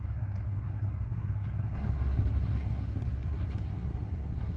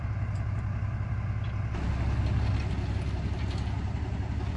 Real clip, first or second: second